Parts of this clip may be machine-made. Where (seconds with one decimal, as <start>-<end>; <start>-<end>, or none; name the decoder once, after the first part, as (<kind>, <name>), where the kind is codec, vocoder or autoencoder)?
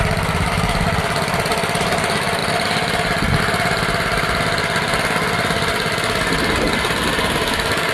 none